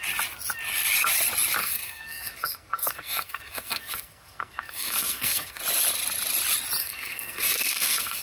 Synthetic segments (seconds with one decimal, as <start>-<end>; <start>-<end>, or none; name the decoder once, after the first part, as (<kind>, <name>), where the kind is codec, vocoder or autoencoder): 1.6-5.6 (codec, SNAC); 6.8-8.2